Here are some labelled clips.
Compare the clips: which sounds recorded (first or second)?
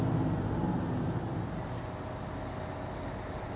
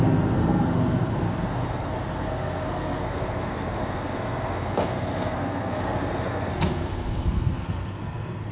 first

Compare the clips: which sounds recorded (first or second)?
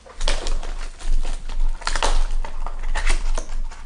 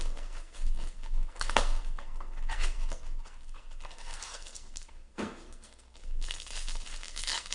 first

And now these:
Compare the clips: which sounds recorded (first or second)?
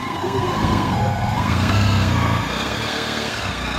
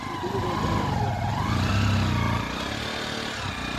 second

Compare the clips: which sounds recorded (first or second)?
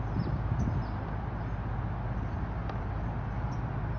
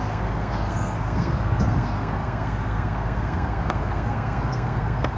first